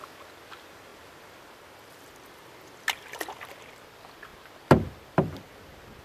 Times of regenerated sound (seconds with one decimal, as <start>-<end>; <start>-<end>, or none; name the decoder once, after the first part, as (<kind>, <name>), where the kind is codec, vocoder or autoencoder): none